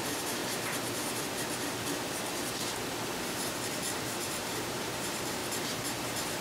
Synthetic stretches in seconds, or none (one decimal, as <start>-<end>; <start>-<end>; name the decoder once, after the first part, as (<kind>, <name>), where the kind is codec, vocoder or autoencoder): 0.0-0.4 (vocoder, BigVGAN v2); 4.2-5.4